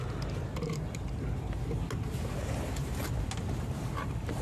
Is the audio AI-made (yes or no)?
no